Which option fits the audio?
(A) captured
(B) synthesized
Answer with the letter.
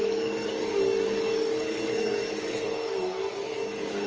B